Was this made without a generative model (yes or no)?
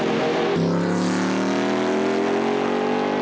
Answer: yes